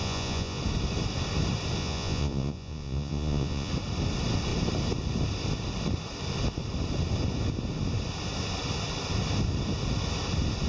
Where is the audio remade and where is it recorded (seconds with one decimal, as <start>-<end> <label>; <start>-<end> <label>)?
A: 0.0-0.6 remade; 0.6-1.8 recorded; 1.8-3.7 remade; 3.7-10.7 recorded